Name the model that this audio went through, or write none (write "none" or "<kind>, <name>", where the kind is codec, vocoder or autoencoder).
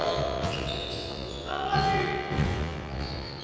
vocoder, WaveNeXt